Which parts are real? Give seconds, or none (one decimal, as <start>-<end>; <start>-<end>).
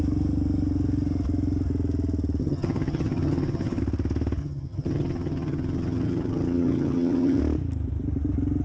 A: 0.0-2.4; 3.8-4.4; 7.4-8.6